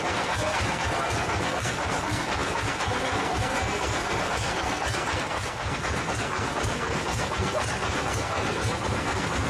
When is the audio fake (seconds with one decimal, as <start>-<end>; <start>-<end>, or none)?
0.0-9.5

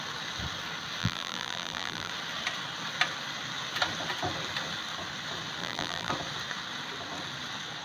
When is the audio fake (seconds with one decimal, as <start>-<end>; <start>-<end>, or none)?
1.0-2.1; 5.6-6.1

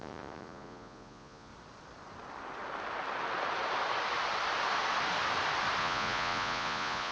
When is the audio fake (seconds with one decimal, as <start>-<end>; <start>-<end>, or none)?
0.0-1.5; 5.8-7.1

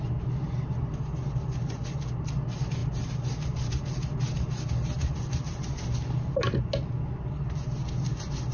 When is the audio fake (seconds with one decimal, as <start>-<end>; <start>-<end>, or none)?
none

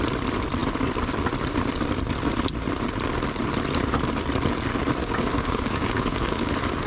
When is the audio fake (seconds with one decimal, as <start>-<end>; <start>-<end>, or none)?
5.0-6.5